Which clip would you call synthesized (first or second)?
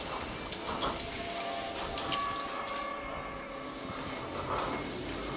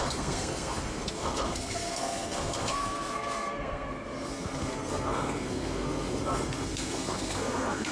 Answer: second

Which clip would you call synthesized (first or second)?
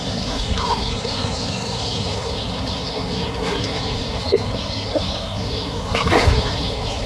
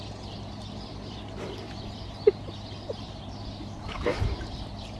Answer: first